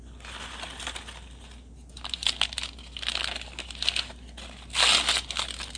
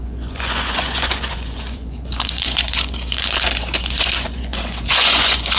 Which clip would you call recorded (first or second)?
first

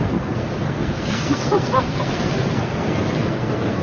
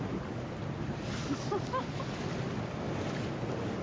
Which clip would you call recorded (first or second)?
second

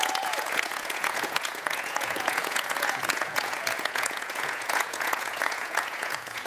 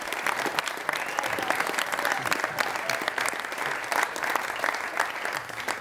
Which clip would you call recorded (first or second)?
second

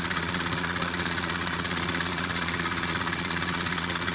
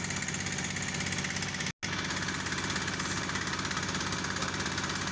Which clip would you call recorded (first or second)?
second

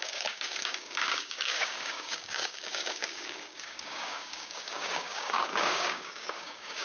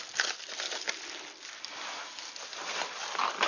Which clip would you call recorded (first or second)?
second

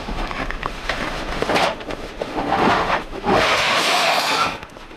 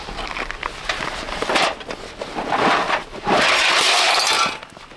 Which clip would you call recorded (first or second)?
second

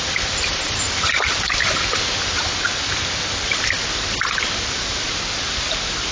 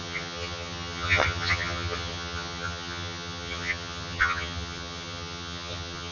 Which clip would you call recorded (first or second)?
first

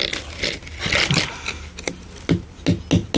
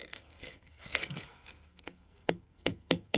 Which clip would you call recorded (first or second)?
first